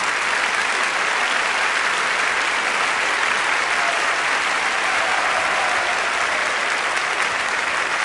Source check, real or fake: real